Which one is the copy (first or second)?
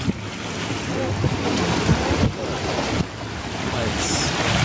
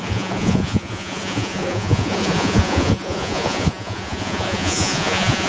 second